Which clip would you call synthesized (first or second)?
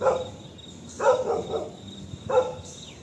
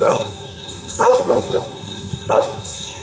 second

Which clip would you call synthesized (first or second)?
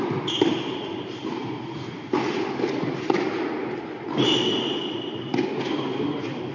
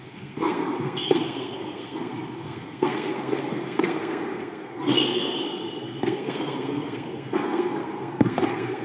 second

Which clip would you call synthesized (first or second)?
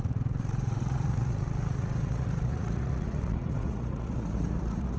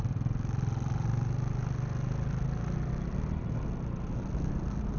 first